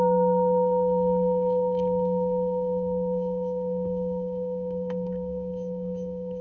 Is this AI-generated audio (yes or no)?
yes